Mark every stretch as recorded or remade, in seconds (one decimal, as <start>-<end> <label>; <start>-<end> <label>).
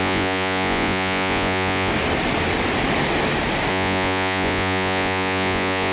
0.0-1.9 remade; 1.9-3.7 recorded; 3.7-5.9 remade